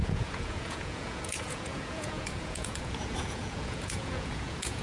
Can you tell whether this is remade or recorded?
remade